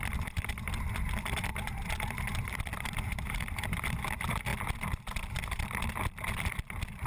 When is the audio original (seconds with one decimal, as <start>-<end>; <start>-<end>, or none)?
1.5-2.1; 4.5-6.5